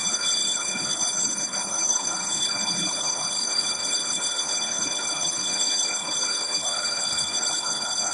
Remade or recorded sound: remade